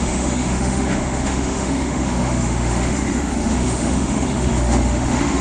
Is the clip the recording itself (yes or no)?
no